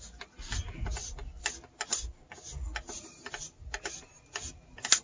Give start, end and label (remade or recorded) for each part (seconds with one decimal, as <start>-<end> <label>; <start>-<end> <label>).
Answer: 0.0-5.0 recorded